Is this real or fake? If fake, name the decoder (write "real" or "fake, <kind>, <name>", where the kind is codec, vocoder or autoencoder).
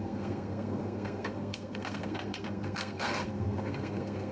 fake, codec, SNAC